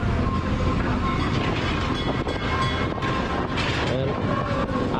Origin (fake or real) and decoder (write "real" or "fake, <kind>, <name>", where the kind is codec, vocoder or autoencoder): real